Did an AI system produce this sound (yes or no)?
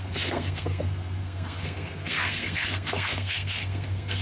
yes